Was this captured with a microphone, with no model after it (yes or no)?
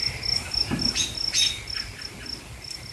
yes